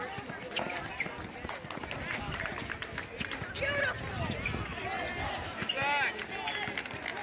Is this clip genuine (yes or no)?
yes